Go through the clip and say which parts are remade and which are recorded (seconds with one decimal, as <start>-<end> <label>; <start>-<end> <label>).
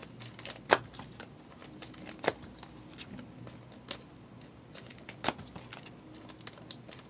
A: 0.0-1.6 recorded; 1.6-3.2 remade; 3.2-4.9 recorded; 4.9-5.5 remade; 5.5-7.1 recorded